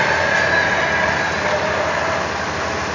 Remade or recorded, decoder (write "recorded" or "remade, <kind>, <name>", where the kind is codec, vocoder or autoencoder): recorded